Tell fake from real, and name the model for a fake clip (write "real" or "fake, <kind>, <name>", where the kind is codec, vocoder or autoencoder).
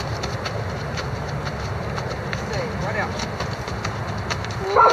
real